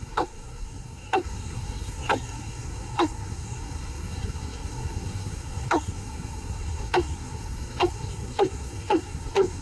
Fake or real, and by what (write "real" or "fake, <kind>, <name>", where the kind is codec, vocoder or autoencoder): fake, codec, SNAC